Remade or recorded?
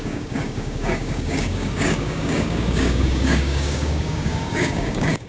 remade